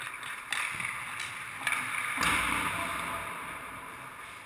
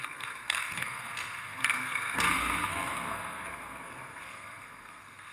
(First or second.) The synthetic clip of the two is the second